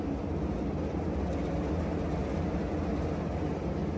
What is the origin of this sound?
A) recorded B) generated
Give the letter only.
A